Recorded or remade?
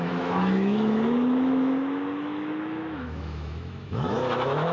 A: remade